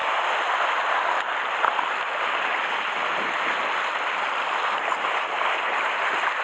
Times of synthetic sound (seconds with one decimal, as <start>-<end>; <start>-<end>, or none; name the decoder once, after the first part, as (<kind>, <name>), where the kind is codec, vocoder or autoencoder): 0.5-3.0 (vocoder, BigVGAN v2); 4.2-6.4